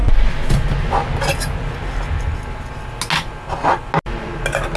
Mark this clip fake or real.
real